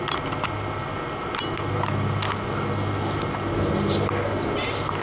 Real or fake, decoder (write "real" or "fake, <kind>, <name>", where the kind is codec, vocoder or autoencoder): real